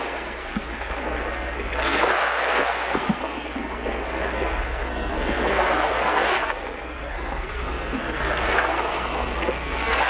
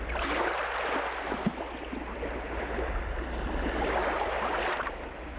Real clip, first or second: second